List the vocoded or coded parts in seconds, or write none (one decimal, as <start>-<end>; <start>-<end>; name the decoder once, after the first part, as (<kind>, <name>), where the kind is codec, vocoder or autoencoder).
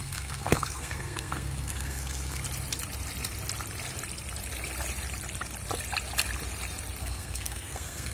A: 0.0-2.4 (codec, SNAC); 7.0-8.1